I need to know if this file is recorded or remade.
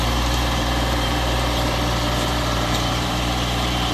remade